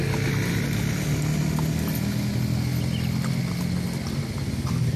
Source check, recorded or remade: recorded